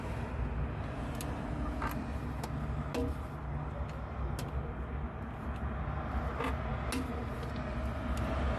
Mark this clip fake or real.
real